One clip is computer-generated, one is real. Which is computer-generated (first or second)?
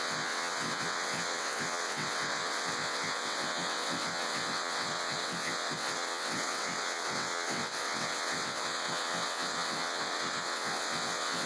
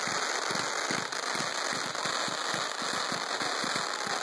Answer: first